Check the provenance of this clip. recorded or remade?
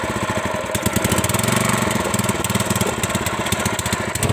recorded